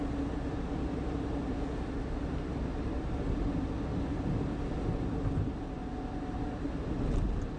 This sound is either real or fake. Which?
real